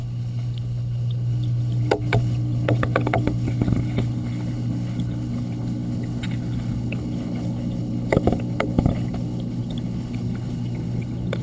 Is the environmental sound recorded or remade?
remade